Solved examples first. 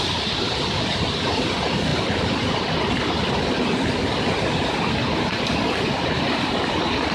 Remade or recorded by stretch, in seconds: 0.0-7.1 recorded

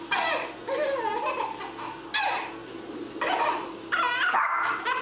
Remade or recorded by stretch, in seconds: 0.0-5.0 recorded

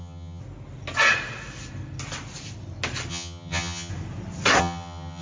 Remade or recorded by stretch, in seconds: 0.0-0.4 remade; 0.4-3.1 recorded; 3.1-3.9 remade; 3.9-4.6 recorded; 4.6-5.2 remade

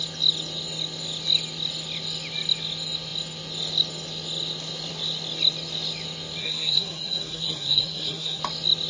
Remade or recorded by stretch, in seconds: 0.0-6.4 recorded; 6.4-8.4 remade; 8.4-8.9 recorded